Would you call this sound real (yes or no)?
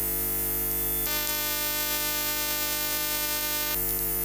yes